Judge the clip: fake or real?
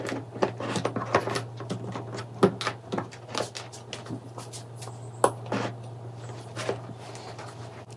real